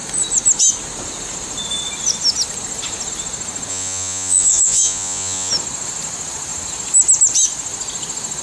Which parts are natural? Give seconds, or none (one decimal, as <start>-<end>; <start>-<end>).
0.0-3.7; 5.5-8.4